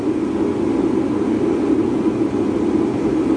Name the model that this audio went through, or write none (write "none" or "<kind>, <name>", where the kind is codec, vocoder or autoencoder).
none